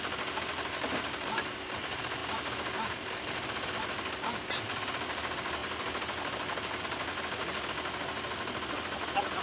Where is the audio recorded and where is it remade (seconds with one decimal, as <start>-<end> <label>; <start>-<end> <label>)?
0.0-9.4 recorded

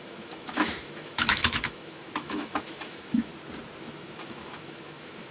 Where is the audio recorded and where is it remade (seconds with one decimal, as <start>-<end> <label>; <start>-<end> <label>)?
0.0-3.3 remade; 3.3-3.8 recorded; 3.8-5.3 remade

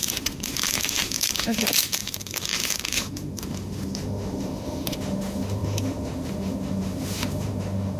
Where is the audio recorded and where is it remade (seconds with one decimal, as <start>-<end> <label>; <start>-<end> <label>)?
0.0-8.0 remade